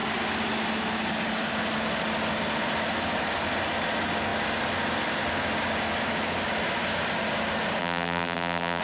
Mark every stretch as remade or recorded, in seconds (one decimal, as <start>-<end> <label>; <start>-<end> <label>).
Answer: 0.0-7.8 recorded; 7.8-8.8 remade